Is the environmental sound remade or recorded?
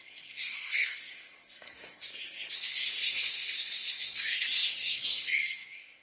remade